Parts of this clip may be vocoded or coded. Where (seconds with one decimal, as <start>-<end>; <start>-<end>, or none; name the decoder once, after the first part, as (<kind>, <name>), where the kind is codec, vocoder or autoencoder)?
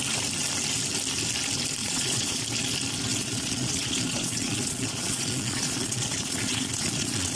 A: 1.8-2.4 (vocoder, Vocos); 3.1-7.4